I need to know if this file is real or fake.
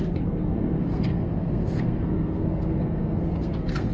fake